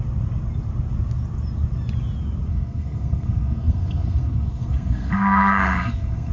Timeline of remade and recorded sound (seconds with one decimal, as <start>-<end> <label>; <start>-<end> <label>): 0.0-2.5 recorded; 2.5-6.3 remade